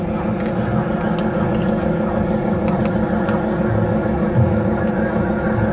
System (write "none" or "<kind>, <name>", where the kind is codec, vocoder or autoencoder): none